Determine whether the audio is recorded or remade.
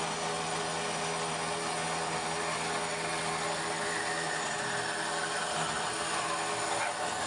recorded